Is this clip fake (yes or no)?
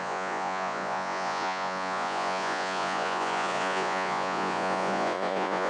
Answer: yes